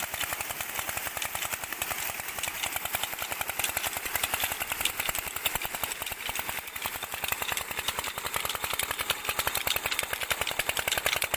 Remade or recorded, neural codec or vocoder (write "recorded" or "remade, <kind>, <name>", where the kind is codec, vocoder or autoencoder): recorded